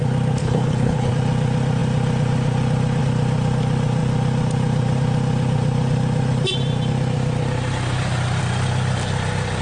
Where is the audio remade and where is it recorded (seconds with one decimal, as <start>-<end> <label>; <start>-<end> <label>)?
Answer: 0.0-0.4 recorded; 0.4-1.1 remade; 1.1-9.6 recorded